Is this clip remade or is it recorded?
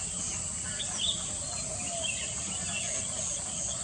recorded